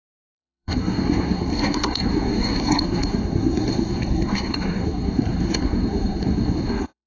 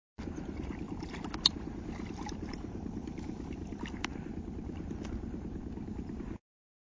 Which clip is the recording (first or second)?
second